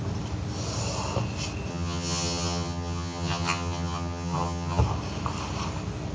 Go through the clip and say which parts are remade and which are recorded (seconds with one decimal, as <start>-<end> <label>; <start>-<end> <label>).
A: 0.0-1.7 recorded; 1.7-4.8 remade; 4.8-6.1 recorded